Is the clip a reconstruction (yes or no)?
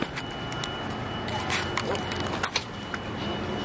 no